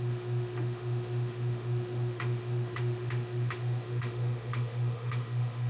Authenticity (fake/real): fake